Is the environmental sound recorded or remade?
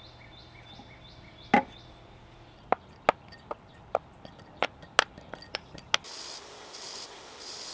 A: recorded